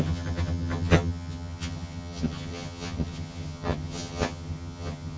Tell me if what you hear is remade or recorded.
remade